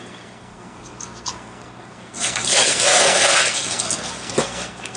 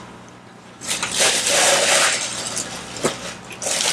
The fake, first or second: first